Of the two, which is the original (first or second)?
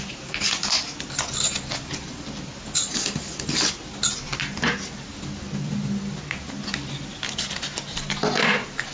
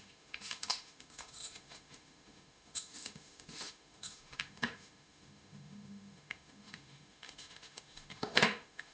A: first